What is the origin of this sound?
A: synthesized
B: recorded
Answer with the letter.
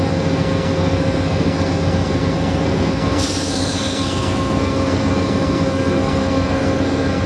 A